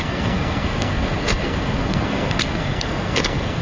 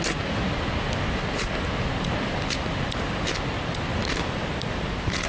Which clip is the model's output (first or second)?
first